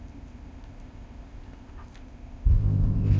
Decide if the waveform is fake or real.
fake